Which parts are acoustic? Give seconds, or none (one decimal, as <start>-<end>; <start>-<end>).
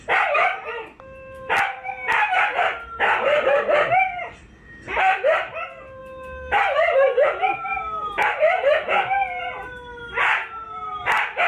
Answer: 6.0-6.6; 7.7-8.2